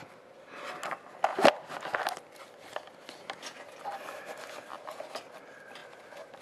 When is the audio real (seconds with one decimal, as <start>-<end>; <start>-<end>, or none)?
0.0-6.4